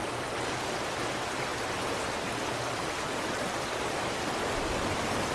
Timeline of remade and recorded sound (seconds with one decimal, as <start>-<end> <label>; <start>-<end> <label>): 0.0-5.3 recorded